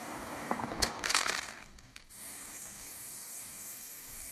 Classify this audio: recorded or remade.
remade